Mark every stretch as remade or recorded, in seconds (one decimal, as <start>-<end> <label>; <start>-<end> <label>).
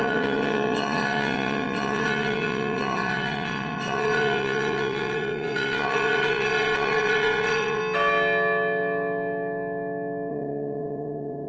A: 0.0-7.8 remade; 7.8-10.3 recorded; 10.3-11.5 remade